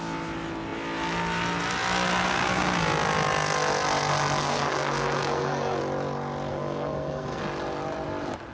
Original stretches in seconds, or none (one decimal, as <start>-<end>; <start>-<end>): 0.0-4.4; 5.8-6.5; 7.4-8.5